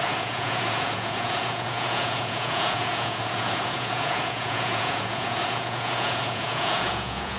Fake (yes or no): yes